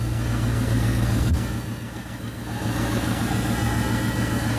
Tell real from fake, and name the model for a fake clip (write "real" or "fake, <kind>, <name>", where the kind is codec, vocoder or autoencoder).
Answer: fake, codec, SNAC